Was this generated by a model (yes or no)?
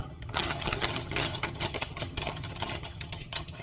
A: yes